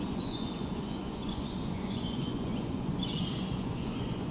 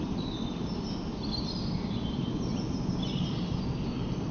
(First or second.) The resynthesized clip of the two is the first